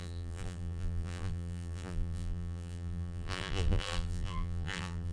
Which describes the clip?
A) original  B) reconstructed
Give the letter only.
B